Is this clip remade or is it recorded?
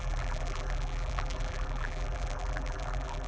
remade